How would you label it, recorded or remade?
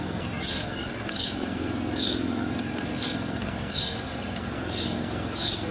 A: remade